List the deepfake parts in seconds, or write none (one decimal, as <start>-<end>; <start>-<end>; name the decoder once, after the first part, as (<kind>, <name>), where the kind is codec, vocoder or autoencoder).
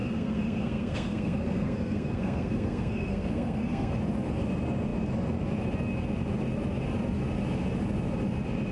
0.0-3.9 (codec, SNAC)